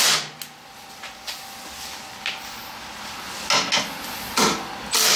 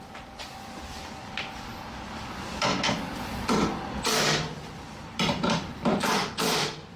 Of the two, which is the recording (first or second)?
first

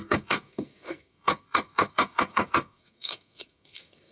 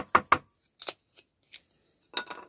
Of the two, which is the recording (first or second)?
second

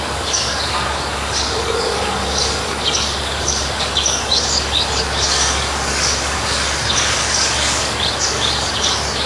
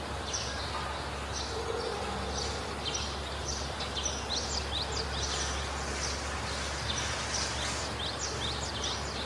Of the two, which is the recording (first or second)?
second